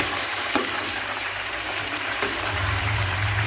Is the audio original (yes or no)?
no